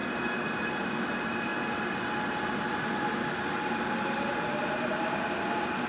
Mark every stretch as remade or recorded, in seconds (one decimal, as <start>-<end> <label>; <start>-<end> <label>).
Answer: 0.0-5.9 recorded